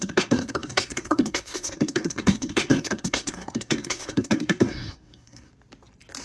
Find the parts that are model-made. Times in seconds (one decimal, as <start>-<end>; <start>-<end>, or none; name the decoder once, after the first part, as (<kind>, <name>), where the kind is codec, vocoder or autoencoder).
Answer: 0.0-5.5 (codec, SNAC)